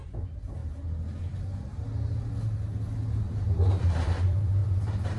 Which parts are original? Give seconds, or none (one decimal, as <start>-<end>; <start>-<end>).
0.6-3.7